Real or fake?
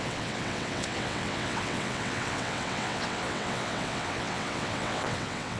fake